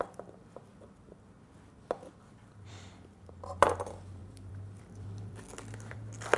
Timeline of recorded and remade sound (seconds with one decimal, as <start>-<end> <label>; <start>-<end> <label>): 0.0-0.7 remade; 0.7-2.2 recorded; 2.2-6.4 remade